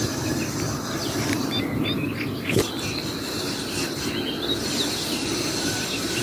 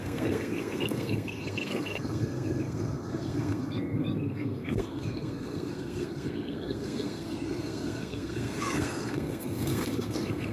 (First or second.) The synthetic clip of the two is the second